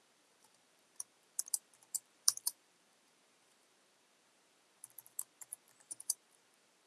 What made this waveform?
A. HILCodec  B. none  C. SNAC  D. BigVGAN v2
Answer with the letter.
D